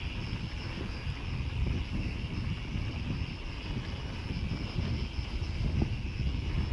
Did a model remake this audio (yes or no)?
no